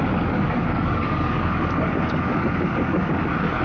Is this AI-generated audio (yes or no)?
yes